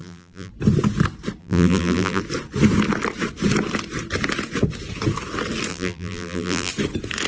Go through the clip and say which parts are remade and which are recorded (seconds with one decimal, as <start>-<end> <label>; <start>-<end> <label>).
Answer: 0.0-0.5 remade; 0.5-1.4 recorded; 1.4-2.2 remade; 2.2-5.7 recorded; 5.7-6.7 remade; 6.7-7.3 recorded